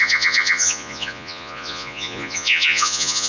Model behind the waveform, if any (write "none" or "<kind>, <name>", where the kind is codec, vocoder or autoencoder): vocoder, Vocos